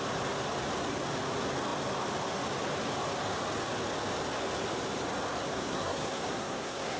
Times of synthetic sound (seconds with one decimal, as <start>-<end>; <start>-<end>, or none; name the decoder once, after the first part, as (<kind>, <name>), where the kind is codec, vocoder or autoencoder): 5.6-7.0 (codec, SNAC)